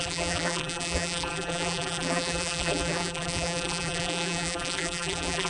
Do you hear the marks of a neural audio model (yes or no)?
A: yes